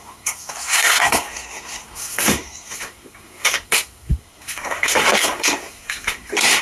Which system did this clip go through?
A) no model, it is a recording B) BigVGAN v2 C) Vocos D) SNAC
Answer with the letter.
D